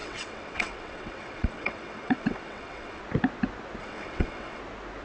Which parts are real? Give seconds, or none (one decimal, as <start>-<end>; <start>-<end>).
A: 3.0-3.8; 4.6-5.0